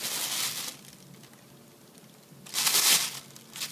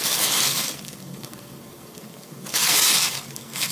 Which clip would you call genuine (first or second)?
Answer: first